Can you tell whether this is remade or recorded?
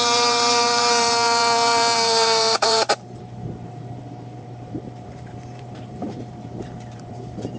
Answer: remade